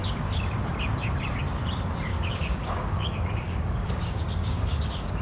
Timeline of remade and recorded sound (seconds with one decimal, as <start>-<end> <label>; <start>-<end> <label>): 0.0-2.1 recorded; 2.1-5.2 remade